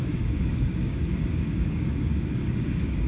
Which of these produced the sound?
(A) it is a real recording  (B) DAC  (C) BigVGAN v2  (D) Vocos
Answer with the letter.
B